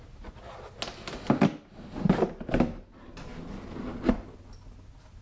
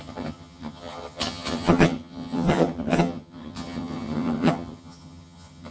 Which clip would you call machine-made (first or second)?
second